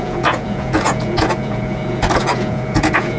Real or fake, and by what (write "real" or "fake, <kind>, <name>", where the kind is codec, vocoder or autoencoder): fake, vocoder, Vocos